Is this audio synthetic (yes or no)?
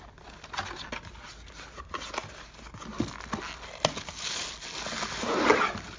no